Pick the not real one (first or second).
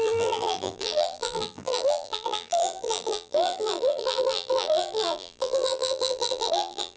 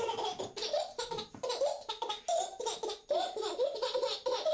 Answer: first